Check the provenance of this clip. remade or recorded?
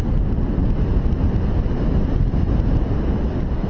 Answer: recorded